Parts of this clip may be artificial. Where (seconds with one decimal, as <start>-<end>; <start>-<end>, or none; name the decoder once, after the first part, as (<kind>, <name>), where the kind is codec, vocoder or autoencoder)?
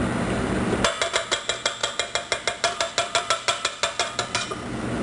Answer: none